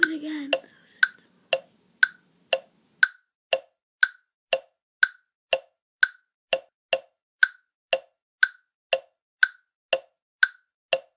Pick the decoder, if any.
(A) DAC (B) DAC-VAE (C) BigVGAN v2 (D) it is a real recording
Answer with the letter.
D